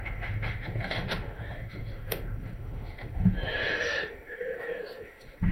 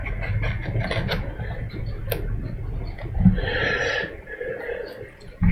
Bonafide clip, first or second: second